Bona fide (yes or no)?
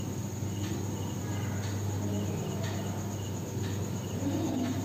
yes